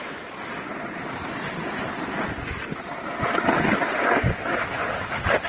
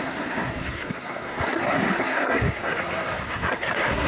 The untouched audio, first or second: first